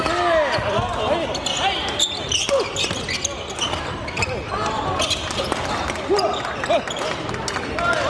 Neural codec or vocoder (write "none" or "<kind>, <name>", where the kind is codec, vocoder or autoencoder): none